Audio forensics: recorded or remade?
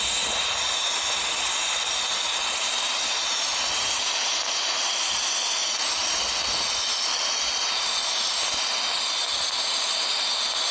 recorded